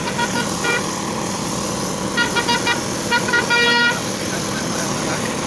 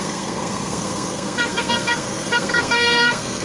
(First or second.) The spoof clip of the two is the second